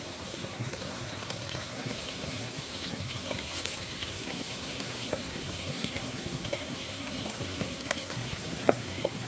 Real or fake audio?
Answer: fake